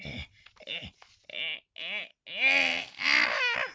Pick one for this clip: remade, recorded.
recorded